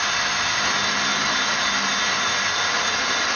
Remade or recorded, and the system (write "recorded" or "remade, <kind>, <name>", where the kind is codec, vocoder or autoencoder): recorded